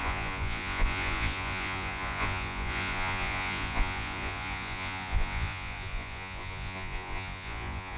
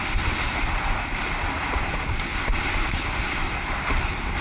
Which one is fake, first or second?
first